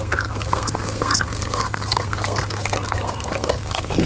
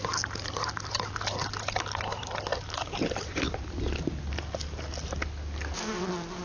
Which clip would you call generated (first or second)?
first